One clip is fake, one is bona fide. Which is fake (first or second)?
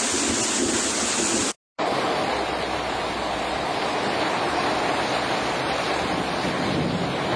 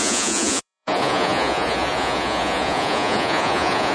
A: second